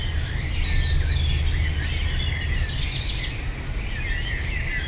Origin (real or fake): real